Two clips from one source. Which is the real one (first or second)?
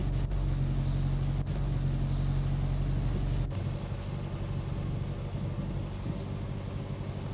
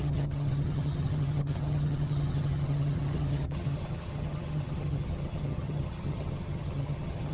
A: first